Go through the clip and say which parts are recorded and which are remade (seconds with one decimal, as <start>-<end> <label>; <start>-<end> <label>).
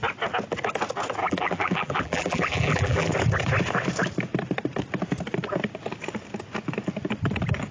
0.0-1.2 recorded; 1.2-3.1 remade; 3.1-7.7 recorded